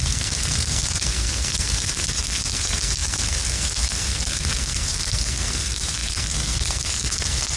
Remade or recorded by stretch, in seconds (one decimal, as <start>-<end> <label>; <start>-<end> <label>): 0.0-7.6 remade